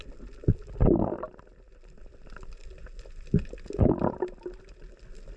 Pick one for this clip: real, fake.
real